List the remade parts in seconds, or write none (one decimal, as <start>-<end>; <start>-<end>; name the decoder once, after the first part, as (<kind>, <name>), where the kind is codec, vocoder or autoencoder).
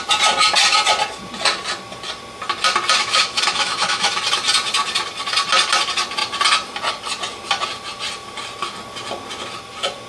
3.0-4.2 (autoencoder, DAC-VAE)